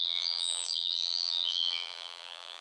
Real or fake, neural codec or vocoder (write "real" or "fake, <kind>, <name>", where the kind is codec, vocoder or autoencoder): fake, vocoder, BigVGAN v2